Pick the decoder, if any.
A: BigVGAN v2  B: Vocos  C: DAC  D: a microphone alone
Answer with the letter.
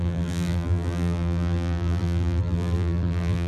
A